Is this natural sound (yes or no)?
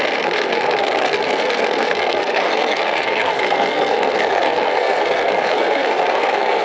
no